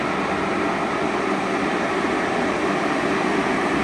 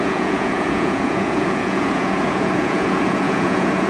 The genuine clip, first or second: first